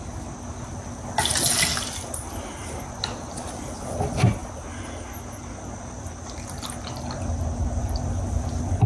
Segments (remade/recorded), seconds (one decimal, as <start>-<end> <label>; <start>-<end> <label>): 0.0-8.9 recorded